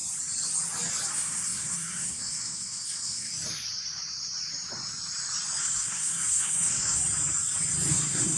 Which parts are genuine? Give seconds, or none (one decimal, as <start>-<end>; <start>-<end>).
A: 0.0-1.1; 3.3-5.6; 7.0-7.9